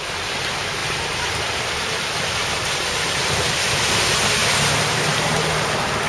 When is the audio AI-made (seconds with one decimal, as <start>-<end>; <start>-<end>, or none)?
0.8-3.0